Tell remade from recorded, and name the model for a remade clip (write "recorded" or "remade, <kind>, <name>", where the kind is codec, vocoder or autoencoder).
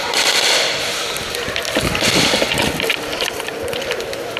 recorded